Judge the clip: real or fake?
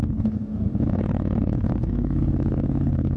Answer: fake